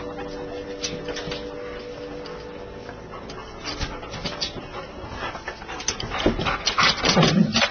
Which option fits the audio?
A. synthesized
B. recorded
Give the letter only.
B